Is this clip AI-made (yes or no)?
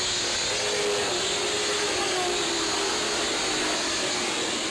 no